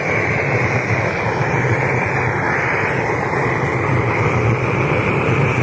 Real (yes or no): yes